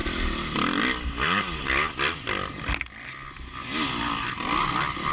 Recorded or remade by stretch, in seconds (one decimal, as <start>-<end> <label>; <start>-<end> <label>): 0.0-5.1 recorded